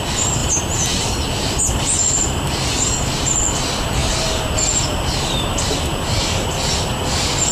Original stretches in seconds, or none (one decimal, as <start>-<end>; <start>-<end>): 0.0-7.5